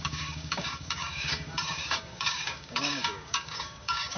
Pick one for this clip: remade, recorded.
remade